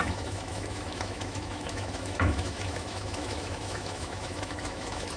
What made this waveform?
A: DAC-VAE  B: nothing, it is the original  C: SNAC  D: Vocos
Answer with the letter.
A